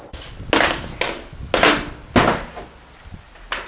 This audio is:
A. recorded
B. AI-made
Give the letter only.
A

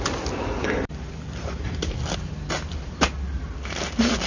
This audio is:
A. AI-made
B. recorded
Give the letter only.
B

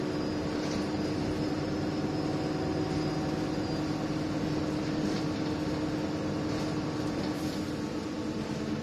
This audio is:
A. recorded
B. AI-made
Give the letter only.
A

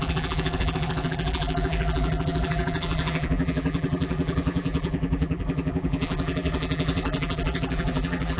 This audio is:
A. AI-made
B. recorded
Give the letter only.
A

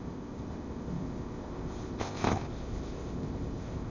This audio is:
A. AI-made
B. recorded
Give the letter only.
A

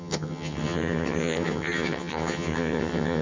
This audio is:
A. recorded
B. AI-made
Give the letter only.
B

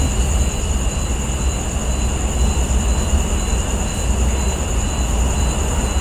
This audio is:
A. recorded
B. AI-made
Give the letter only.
A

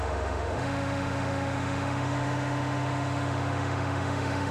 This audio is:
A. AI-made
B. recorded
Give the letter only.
A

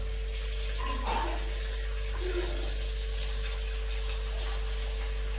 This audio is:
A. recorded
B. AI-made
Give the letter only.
A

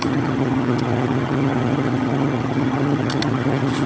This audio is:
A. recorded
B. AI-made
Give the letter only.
B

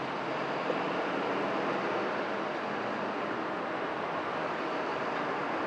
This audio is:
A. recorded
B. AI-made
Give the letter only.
A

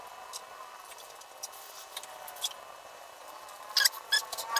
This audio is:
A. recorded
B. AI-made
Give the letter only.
A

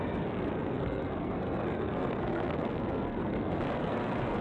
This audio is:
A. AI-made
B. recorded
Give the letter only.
A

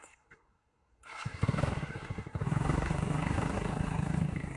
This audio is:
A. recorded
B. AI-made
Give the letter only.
B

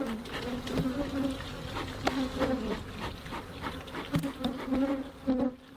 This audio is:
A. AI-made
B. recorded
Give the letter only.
B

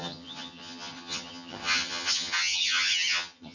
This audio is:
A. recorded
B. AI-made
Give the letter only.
B